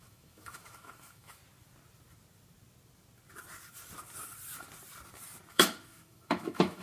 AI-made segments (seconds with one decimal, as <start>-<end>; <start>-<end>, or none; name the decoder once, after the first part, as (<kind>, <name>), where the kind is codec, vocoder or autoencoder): 0.0-1.4 (autoencoder, DAC-VAE); 5.5-6.8